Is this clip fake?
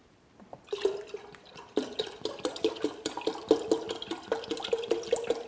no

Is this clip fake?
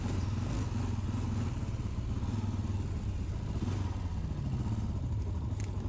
no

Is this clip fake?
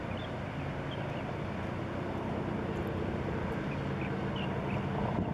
no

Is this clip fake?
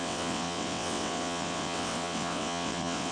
yes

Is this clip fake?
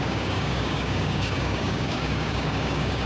yes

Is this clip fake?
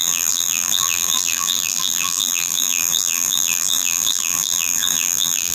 yes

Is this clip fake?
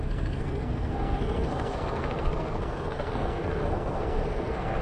yes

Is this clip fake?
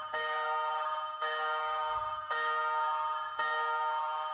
yes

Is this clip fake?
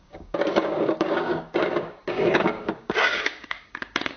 yes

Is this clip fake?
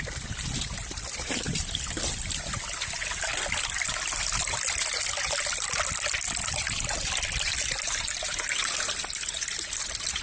no